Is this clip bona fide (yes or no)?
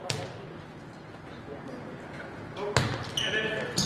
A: yes